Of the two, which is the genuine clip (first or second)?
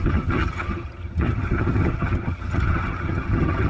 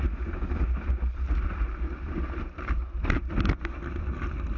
second